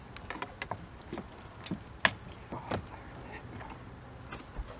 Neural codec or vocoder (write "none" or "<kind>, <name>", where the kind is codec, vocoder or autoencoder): none